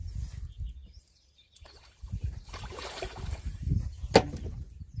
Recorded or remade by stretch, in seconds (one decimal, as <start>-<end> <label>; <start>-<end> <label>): 0.0-0.8 recorded; 0.8-3.8 remade; 3.8-5.0 recorded